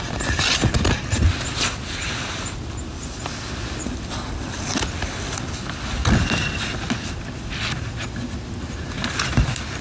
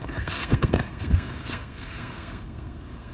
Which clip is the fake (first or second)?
second